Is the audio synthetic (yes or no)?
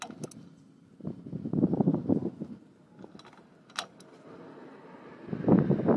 no